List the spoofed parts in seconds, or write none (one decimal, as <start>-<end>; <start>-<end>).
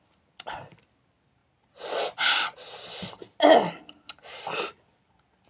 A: none